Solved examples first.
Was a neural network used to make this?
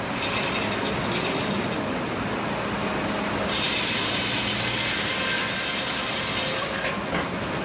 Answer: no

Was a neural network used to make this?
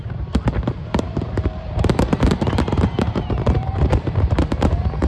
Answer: yes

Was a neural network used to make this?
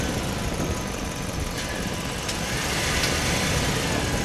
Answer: no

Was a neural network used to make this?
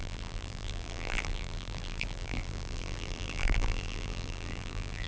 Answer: yes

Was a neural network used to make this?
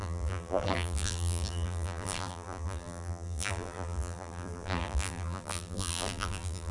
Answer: yes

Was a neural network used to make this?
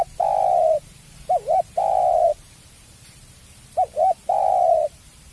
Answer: yes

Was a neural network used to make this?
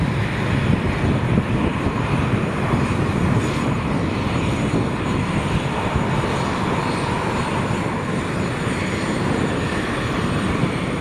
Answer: no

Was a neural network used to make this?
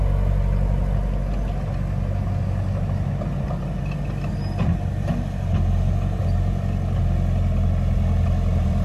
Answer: no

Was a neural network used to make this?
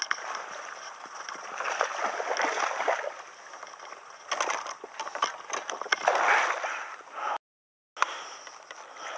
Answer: no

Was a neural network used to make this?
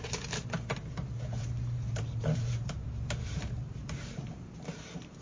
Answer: yes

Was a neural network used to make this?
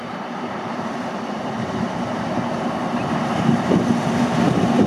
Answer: yes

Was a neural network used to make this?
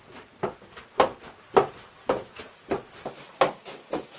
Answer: no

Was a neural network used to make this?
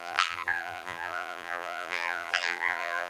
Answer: yes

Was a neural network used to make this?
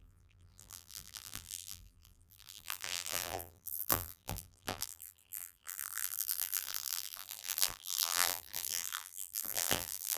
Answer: yes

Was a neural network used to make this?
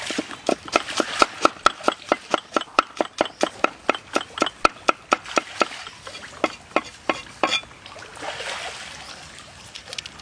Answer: no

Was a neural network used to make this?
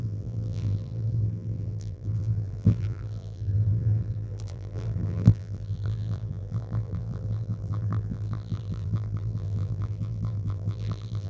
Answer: yes